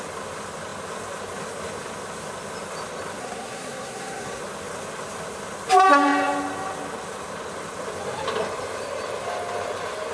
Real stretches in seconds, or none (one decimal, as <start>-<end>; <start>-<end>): 0.0-3.2; 4.4-10.1